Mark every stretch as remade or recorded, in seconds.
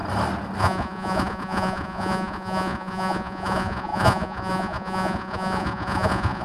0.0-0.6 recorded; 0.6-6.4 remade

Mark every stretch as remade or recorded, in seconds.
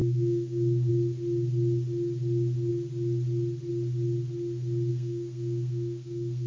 0.0-0.9 remade; 0.9-4.9 recorded; 4.9-6.5 remade